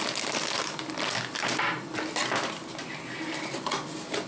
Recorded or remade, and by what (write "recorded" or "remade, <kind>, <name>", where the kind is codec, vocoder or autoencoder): recorded